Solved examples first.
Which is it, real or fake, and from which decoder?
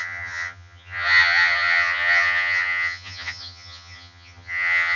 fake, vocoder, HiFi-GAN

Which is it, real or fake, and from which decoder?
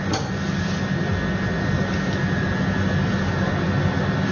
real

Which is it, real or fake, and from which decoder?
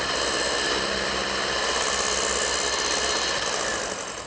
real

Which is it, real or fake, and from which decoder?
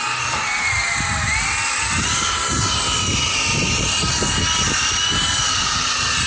real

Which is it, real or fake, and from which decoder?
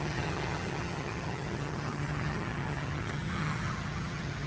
fake, vocoder, HiFi-GAN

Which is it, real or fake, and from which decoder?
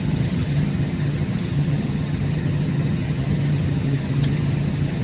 fake, vocoder, HiFi-GAN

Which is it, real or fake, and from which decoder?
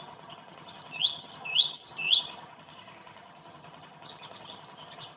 fake, vocoder, HiFi-GAN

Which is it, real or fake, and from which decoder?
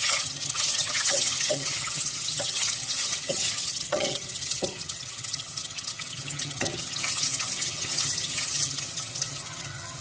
fake, vocoder, HiFi-GAN